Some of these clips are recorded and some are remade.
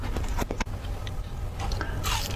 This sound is recorded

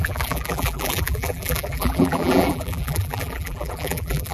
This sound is remade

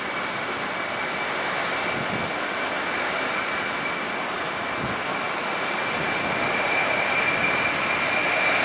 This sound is recorded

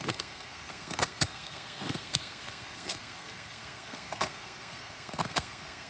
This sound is remade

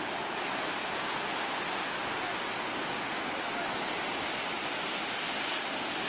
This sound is recorded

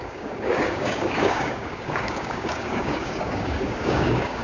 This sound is remade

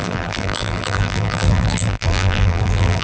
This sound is remade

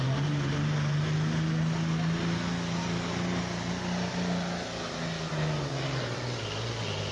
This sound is recorded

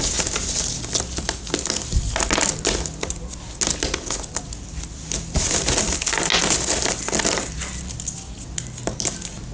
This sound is recorded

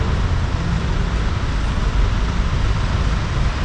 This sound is recorded